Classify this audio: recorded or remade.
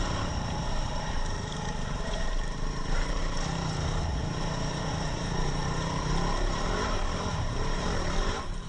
remade